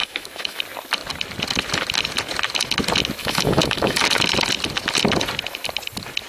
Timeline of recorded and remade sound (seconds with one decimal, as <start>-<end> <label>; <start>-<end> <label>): 0.0-0.6 remade; 0.6-3.2 recorded; 3.2-4.0 remade; 4.0-6.3 recorded